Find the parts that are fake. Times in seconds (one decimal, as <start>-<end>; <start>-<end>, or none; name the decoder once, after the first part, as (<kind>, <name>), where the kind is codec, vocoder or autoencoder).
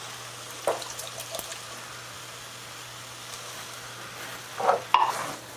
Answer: 1.5-2.2 (vocoder, BigVGAN v2); 4.3-5.1